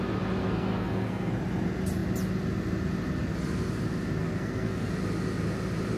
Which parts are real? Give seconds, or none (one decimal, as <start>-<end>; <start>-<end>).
0.0-0.4; 1.3-4.2; 4.9-6.0